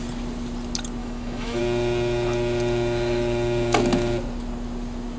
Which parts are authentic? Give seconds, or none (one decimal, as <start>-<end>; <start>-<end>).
0.0-1.0; 1.6-5.2